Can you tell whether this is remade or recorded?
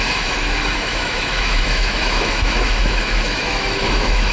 remade